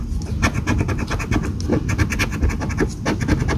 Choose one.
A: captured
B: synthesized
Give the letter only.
A